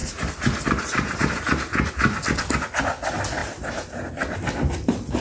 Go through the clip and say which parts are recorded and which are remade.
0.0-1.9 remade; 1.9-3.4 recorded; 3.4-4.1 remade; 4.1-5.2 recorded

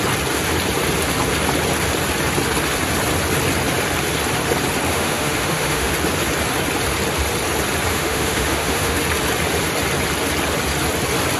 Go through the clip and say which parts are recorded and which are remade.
0.0-4.9 recorded; 4.9-5.9 remade; 5.9-7.9 recorded; 7.9-9.0 remade; 9.0-11.4 recorded

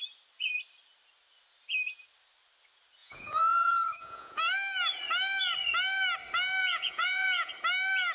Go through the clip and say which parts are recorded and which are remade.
0.0-3.0 recorded; 3.0-4.4 remade; 4.4-6.6 recorded; 6.6-7.5 remade; 7.5-8.1 recorded

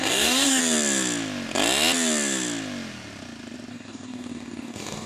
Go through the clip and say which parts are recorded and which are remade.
0.0-0.6 remade; 0.6-3.7 recorded; 3.7-5.1 remade

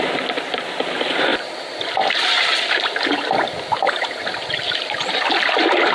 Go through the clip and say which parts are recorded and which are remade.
0.0-1.3 recorded; 1.3-4.8 remade; 4.8-5.9 recorded

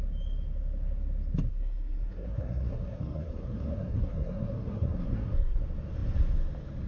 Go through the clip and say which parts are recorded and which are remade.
0.0-1.5 recorded; 1.5-5.6 remade; 5.6-6.9 recorded

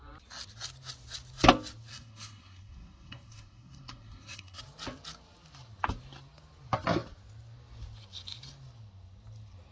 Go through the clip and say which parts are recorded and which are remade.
0.0-1.9 recorded; 1.9-4.6 remade; 4.6-9.7 recorded

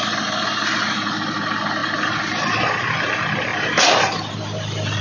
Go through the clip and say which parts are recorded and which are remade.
0.0-3.5 recorded; 3.5-4.2 remade; 4.2-5.0 recorded